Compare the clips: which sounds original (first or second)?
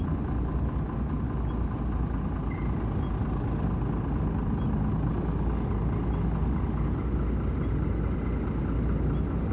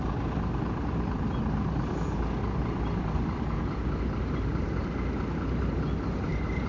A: first